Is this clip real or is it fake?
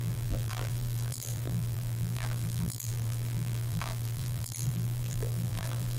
fake